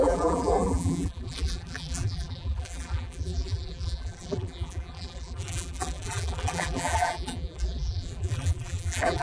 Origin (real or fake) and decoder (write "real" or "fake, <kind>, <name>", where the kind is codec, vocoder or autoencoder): fake, vocoder, BigVGAN v2